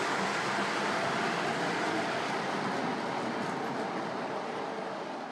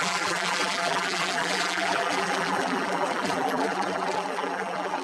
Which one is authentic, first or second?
first